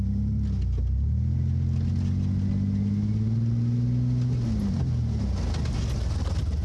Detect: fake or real real